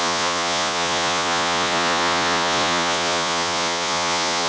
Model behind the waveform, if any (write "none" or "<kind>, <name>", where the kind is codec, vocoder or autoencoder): vocoder, Vocos